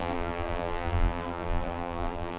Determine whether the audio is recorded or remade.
remade